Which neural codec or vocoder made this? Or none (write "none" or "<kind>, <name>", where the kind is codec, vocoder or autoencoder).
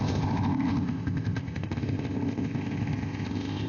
codec, ZipCodec